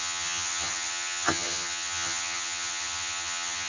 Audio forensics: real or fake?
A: fake